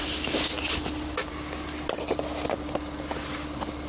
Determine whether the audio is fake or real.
real